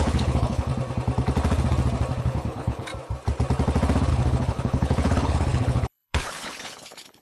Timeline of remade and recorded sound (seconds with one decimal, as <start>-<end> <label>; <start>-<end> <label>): 0.0-0.7 remade; 0.7-2.2 recorded; 2.2-2.9 remade; 2.9-4.1 recorded; 4.1-7.2 remade